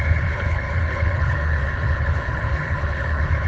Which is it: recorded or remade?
remade